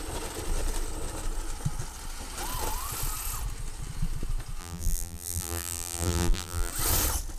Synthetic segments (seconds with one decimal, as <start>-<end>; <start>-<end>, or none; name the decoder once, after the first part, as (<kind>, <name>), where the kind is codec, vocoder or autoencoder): 4.6-6.7 (vocoder, BigVGAN v2)